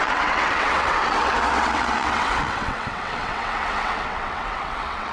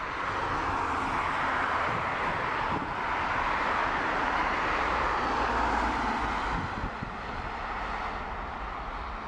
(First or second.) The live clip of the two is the second